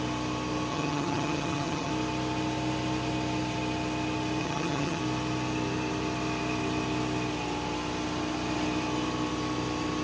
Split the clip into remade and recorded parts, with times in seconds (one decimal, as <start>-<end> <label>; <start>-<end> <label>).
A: 0.0-0.7 recorded; 0.7-1.9 remade; 1.9-4.4 recorded; 4.4-5.0 remade; 5.0-10.0 recorded